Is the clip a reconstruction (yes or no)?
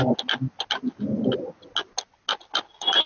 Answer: no